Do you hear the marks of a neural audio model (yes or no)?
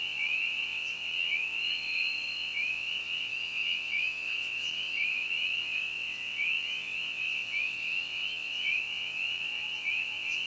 yes